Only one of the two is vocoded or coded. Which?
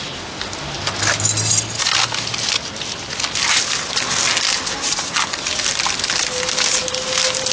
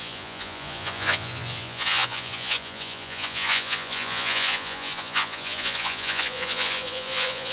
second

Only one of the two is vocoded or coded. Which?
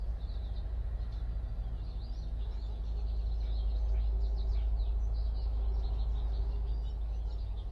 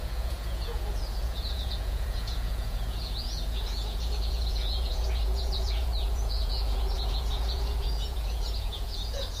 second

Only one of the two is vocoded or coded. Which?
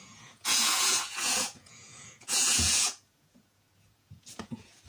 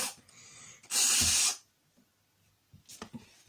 first